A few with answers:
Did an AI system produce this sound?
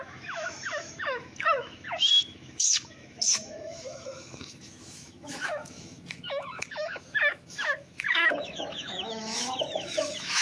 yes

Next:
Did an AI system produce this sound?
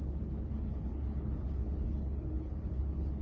yes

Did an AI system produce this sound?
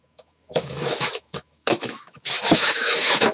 yes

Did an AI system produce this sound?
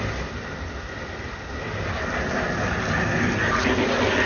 no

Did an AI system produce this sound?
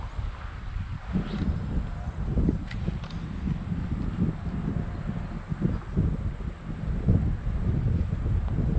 no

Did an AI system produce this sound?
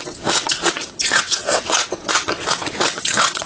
yes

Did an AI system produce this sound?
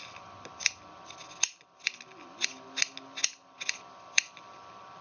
no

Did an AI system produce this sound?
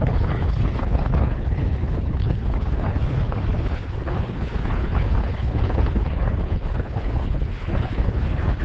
yes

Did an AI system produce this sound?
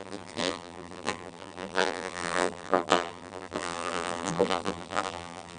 yes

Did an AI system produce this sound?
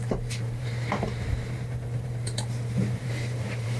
yes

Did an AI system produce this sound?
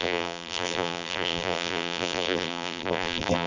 yes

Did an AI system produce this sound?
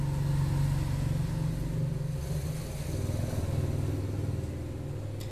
no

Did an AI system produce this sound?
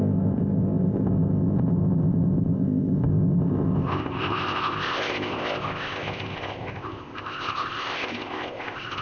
yes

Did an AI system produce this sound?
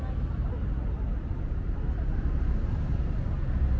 no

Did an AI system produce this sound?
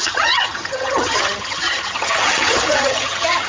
yes